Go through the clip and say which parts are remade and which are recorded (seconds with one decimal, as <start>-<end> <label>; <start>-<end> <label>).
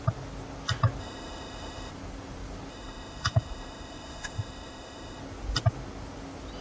0.0-1.0 recorded; 1.0-1.9 remade; 1.9-2.7 recorded; 2.7-5.2 remade; 5.2-6.6 recorded